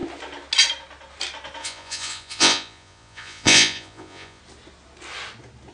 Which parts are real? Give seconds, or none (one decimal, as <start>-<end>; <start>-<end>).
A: 0.0-1.6; 4.4-5.7